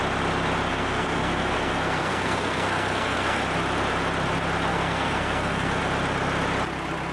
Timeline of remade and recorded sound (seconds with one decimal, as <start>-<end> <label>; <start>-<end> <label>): 0.0-0.7 recorded; 0.7-3.4 remade; 3.4-4.7 recorded; 4.7-5.8 remade; 5.8-7.1 recorded